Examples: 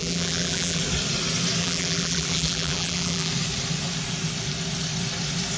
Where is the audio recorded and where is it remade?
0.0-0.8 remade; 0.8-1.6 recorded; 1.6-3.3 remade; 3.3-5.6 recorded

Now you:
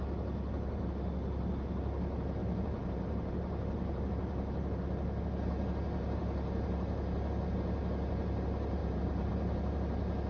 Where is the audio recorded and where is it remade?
0.0-2.4 recorded; 2.4-4.0 remade; 4.0-8.8 recorded; 8.8-9.3 remade; 9.3-10.3 recorded

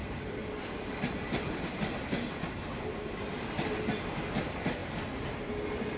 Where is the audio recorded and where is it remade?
0.0-4.8 remade; 4.8-6.0 recorded

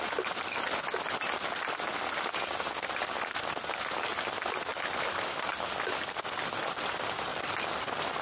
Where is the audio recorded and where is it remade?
0.0-4.7 recorded; 4.7-5.3 remade; 5.3-8.2 recorded

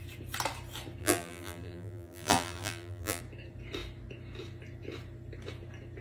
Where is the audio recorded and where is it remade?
0.0-1.0 recorded; 1.0-3.2 remade; 3.2-6.0 recorded

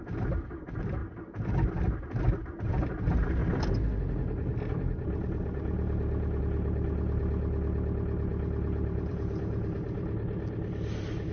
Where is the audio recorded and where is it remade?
0.0-1.0 remade; 1.0-2.1 recorded; 2.1-3.4 remade; 3.4-6.4 recorded; 6.4-11.3 remade

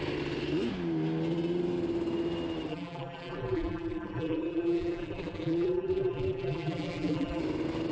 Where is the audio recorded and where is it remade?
0.0-2.7 recorded; 2.7-7.4 remade; 7.4-7.9 recorded

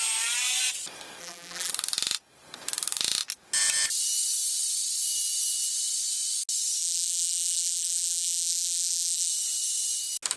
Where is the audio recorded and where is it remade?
0.0-1.2 recorded; 1.2-1.7 remade; 1.7-6.8 recorded; 6.8-9.3 remade; 9.3-10.4 recorded